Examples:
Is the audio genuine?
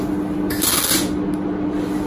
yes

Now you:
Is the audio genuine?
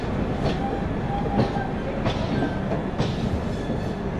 yes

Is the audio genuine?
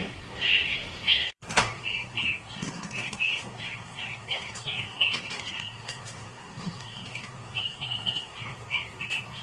no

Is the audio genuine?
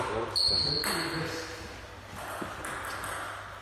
yes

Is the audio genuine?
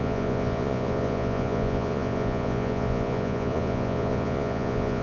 no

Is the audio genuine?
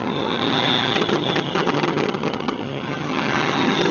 no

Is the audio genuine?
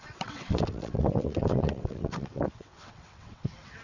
no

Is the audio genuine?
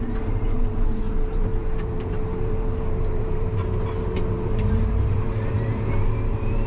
no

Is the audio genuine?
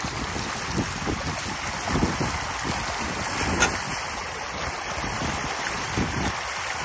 yes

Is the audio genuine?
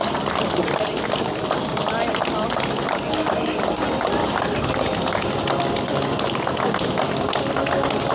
yes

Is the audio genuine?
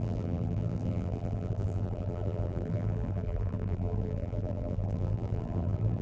no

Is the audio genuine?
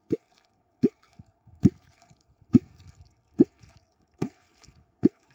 no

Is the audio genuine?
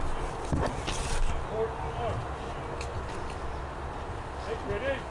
yes